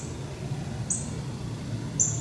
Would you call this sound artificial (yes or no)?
no